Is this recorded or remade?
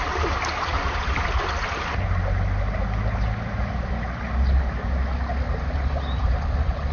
recorded